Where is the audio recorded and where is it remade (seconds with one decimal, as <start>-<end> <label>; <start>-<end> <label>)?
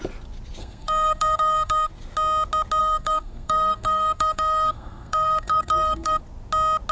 0.0-0.6 recorded; 0.6-1.9 remade; 1.9-2.8 recorded; 2.8-6.2 remade; 6.2-6.9 recorded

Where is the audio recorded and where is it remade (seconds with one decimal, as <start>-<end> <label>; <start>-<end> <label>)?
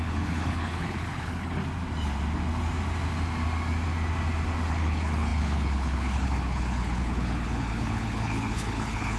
0.0-1.6 remade; 1.6-4.7 recorded; 4.7-9.2 remade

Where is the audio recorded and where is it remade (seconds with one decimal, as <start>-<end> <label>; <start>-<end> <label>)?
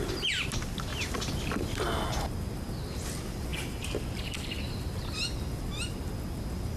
0.0-0.9 recorded; 0.9-1.6 remade; 1.6-3.5 recorded; 3.5-5.2 remade; 5.2-6.8 recorded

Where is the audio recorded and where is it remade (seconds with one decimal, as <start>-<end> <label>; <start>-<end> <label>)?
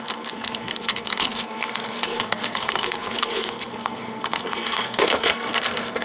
0.0-6.0 remade